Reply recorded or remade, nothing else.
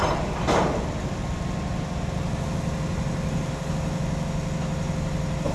recorded